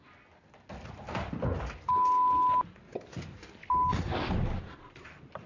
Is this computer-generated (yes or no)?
no